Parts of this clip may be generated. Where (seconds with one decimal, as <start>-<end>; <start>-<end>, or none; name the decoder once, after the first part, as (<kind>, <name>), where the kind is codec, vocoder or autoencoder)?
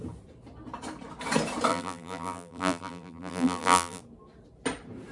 1.7-4.0 (vocoder, BigVGAN v2)